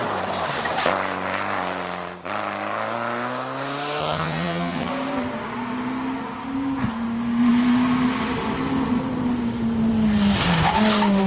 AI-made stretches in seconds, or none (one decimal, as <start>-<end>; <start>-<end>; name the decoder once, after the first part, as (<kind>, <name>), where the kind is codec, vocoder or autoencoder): 4.0-4.9 (vocoder, HiFi-GAN)

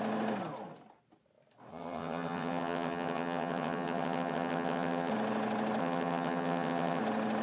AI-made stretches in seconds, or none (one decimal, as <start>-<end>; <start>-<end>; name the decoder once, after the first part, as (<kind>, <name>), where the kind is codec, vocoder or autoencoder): 1.7-5.1 (vocoder, HiFi-GAN); 5.8-7.0

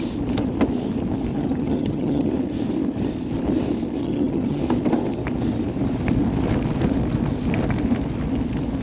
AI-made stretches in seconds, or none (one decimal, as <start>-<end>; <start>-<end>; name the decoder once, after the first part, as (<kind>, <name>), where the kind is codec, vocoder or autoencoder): 1.3-2.3 (vocoder, HiFi-GAN); 4.0-4.6

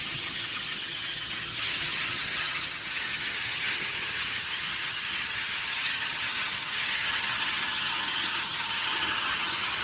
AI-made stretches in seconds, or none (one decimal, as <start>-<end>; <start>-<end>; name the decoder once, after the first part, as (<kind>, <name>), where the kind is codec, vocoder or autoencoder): 0.0-9.8 (vocoder, HiFi-GAN)

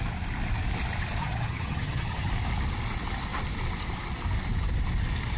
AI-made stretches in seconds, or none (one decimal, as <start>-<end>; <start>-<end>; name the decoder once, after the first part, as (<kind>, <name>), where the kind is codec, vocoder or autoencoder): 1.2-2.3 (vocoder, HiFi-GAN)